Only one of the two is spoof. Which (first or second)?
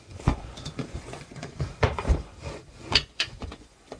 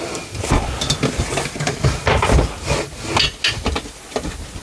first